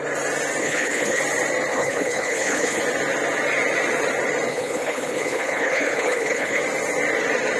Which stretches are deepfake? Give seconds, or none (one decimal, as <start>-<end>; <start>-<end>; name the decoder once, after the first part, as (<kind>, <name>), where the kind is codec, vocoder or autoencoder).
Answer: 0.6-1.2 (codec, HILCodec); 1.7-2.8; 4.5-6.6